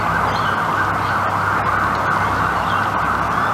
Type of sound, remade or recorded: recorded